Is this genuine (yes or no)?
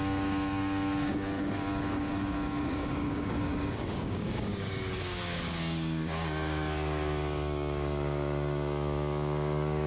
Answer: no